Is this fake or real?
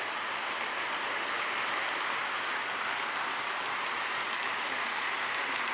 real